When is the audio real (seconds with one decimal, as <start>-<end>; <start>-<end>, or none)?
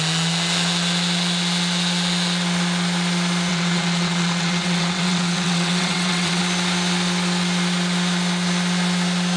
0.0-3.5; 6.4-9.4